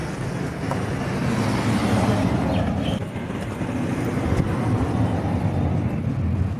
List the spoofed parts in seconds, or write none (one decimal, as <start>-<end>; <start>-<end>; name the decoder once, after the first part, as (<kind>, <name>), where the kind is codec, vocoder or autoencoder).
none